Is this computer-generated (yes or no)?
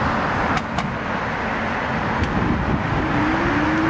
no